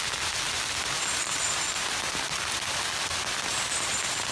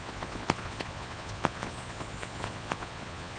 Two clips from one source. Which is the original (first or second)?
first